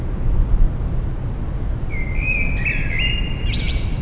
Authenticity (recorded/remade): recorded